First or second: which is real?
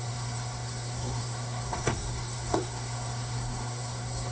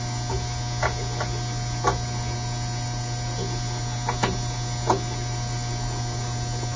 second